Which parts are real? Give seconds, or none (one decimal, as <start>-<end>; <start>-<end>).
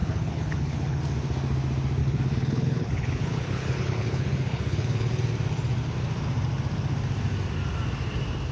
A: 1.0-2.0; 5.1-8.5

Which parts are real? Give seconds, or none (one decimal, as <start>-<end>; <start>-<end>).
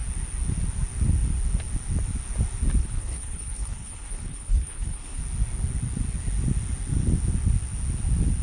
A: 0.0-2.8; 5.2-8.4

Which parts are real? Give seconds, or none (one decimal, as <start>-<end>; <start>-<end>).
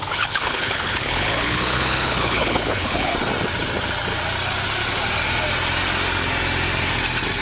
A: 3.1-7.4